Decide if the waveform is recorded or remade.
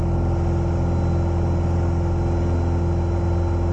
recorded